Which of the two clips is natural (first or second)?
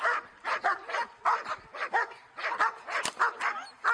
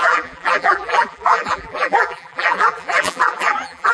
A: first